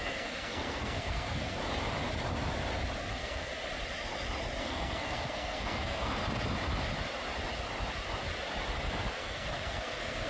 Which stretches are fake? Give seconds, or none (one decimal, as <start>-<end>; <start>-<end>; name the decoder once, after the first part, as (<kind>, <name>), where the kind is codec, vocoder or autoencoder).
0.0-1.6 (codec, SNAC); 3.1-3.5; 4.6-6.2; 9.1-10.3